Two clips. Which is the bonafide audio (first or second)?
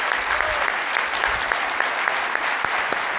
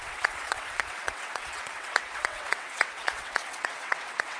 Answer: first